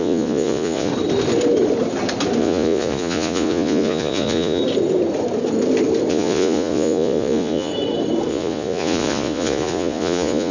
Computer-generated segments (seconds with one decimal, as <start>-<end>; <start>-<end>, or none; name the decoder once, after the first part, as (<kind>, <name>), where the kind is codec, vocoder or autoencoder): 0.0-0.9 (vocoder, Vocos); 2.4-4.6; 6.1-7.7; 8.3-10.5